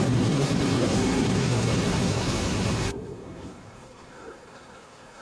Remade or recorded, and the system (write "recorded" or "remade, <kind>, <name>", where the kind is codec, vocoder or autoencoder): remade, codec, SNAC